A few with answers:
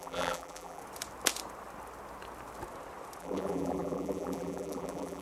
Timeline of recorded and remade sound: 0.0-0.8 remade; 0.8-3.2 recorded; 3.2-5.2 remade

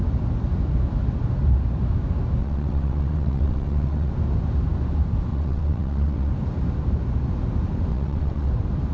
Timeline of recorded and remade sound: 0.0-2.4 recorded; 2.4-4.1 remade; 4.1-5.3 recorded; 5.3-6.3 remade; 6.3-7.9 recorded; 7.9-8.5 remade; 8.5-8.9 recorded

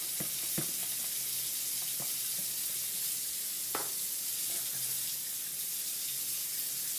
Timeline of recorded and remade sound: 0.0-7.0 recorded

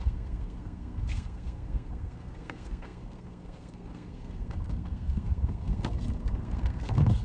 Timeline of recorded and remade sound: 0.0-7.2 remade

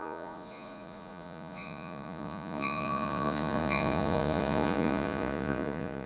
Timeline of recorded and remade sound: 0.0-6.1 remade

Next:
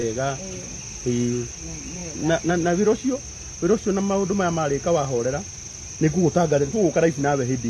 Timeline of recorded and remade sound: 0.0-7.7 recorded